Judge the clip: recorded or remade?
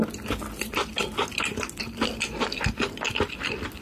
remade